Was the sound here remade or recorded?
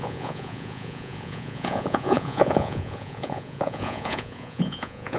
remade